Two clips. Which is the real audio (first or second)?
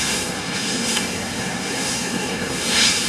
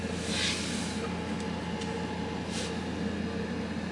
second